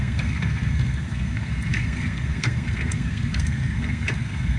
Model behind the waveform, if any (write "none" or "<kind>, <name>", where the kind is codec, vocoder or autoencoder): codec, SNAC